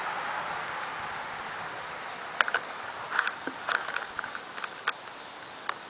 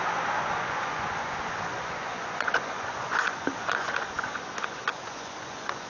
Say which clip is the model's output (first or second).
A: second